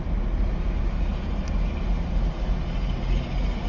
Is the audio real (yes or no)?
yes